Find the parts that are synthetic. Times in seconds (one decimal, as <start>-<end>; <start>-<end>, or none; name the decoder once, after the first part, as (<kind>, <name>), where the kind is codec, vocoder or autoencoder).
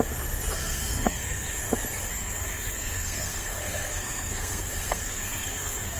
0.6-1.6 (codec, SNAC); 2.1-6.0